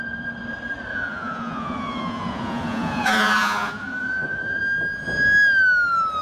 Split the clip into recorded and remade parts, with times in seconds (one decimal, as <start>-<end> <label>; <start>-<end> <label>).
0.0-0.9 recorded; 0.9-4.6 remade; 4.6-6.2 recorded